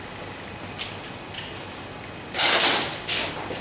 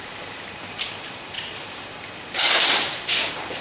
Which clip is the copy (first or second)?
second